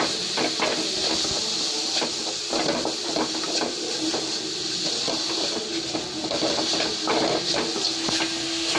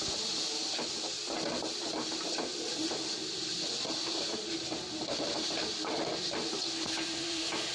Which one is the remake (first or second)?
second